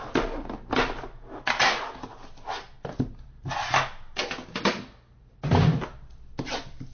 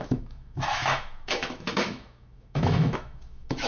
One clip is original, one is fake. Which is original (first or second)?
first